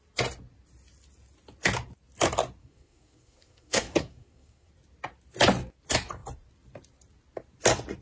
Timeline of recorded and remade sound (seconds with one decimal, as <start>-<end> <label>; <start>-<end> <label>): 0.0-2.6 recorded; 2.6-4.7 remade; 4.7-8.0 recorded